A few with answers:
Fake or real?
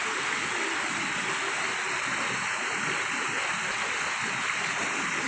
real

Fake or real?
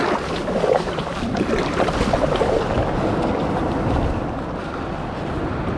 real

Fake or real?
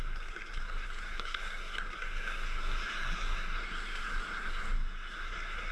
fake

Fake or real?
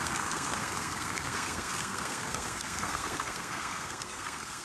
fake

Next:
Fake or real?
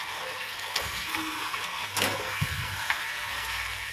fake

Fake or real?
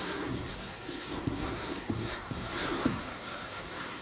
fake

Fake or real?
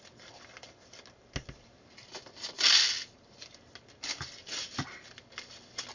real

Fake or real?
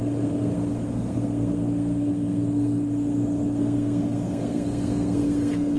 fake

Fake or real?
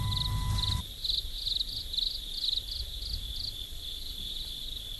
real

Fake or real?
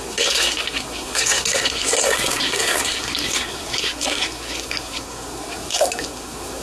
fake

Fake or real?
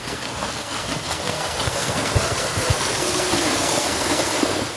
fake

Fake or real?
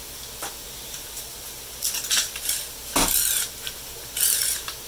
real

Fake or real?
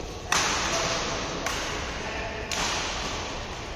real